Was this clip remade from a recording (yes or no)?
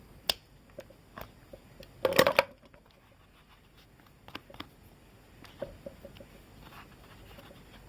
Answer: no